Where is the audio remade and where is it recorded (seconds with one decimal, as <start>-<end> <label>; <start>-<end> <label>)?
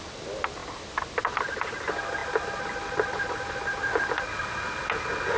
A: 0.0-5.4 recorded